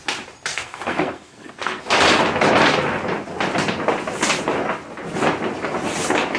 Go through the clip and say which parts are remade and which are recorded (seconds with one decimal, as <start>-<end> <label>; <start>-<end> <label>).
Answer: 0.0-0.5 recorded; 0.5-1.8 remade; 1.8-6.4 recorded